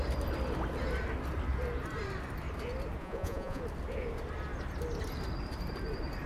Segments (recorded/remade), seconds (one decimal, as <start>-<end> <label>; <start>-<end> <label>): 0.0-3.0 recorded; 3.0-3.6 remade; 3.6-6.3 recorded